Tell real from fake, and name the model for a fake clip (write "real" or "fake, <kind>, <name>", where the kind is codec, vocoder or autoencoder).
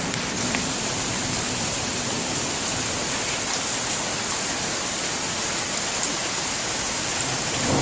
real